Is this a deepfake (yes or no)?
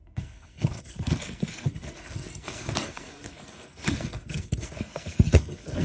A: yes